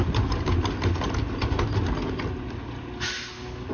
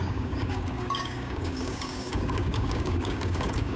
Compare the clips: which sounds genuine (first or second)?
first